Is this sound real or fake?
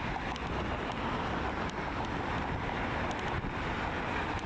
real